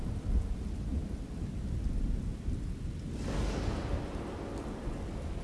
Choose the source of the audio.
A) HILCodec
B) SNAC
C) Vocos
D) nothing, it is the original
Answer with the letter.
D